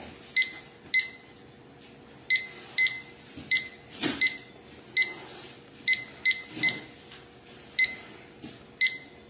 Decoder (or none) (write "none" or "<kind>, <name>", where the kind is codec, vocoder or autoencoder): none